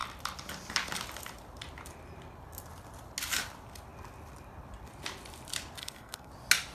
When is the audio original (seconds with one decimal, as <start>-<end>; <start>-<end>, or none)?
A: 0.0-5.8; 6.3-6.7